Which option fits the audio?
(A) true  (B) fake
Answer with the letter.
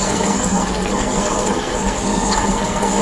B